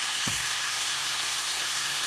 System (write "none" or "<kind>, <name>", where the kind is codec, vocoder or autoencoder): codec, SNAC